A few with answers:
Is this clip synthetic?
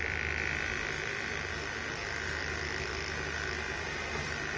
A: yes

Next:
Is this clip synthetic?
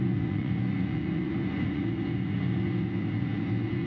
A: yes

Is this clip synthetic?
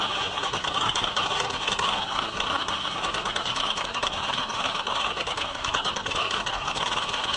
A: yes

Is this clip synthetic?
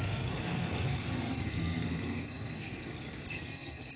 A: yes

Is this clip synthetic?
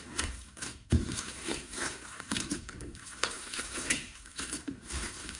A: yes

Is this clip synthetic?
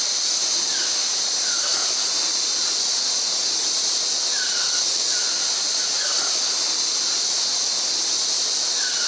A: no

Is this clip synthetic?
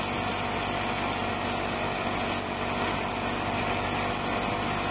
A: no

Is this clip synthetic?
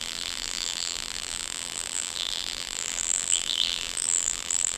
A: yes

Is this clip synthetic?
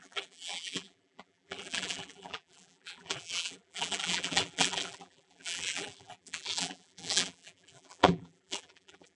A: yes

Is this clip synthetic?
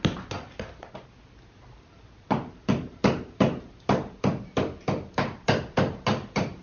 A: no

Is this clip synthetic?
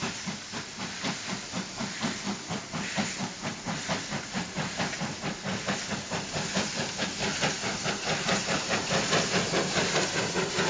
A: no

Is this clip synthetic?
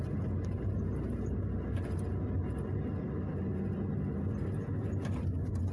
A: no